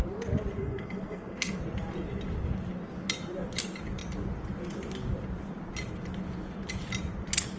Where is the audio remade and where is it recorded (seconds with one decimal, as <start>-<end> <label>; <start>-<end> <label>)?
0.0-0.6 recorded; 0.6-1.6 remade; 1.6-7.6 recorded